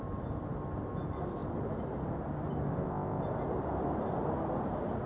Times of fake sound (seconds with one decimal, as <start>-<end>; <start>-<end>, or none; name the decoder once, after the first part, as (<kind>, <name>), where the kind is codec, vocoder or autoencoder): 2.7-3.2 (codec, ZipCodec)